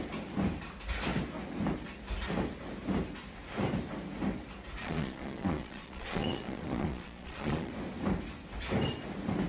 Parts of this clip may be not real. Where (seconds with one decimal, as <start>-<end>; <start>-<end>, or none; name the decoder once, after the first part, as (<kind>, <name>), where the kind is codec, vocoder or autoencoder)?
4.8-7.7 (vocoder, Vocos)